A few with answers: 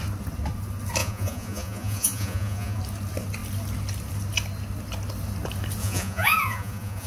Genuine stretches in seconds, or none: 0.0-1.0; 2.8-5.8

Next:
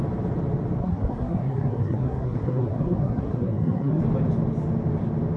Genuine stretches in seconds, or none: 0.0-0.8; 4.0-5.4

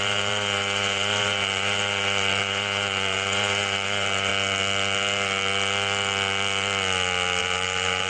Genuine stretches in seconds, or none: 4.3-7.4

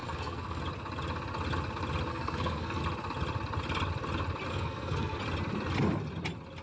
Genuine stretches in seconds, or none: 0.6-2.1; 2.8-4.5; 5.2-6.6

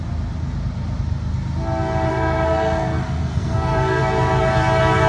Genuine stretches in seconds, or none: 0.0-2.1; 4.0-5.1

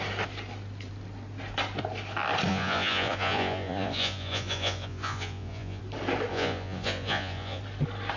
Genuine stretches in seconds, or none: 0.0-2.5; 5.8-6.3; 7.6-8.2